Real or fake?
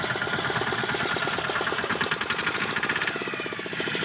real